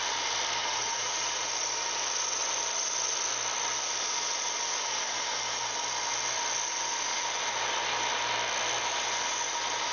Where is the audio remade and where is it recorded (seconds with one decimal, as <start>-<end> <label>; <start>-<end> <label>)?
0.0-0.6 recorded; 0.6-1.5 remade; 1.5-9.9 recorded